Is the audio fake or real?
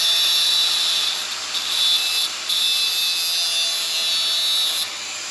real